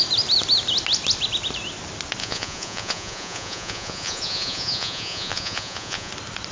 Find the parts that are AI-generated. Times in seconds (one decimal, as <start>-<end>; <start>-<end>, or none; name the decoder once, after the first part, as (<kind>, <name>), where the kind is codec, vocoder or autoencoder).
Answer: 2.2-6.1 (vocoder, Vocos)